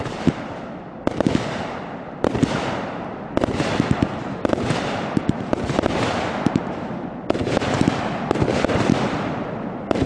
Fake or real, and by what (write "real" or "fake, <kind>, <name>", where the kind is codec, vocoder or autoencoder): real